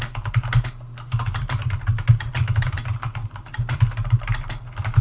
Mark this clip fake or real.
real